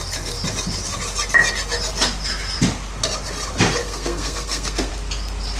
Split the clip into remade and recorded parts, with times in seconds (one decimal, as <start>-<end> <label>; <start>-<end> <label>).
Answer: 0.0-3.8 recorded; 3.8-4.9 remade; 4.9-5.6 recorded